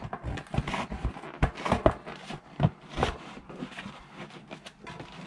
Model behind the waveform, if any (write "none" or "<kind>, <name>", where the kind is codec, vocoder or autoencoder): none